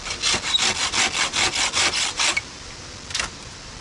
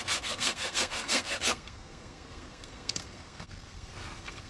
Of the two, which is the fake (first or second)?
second